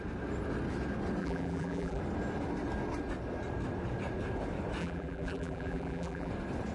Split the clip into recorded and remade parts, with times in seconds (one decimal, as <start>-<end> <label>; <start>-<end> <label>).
0.0-1.2 recorded; 1.2-2.0 remade; 2.0-4.8 recorded; 4.8-6.3 remade; 6.3-6.7 recorded